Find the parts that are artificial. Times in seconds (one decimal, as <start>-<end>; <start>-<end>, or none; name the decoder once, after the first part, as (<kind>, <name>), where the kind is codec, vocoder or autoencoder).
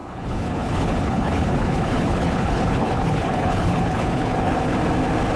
0.0-4.7 (codec, HILCodec)